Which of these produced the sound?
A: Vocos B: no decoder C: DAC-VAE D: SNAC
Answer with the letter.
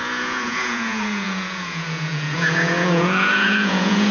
A